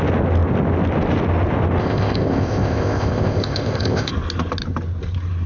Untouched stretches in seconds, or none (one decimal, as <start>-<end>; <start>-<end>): 0.0-1.8; 4.1-5.5